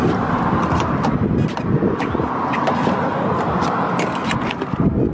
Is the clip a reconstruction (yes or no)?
no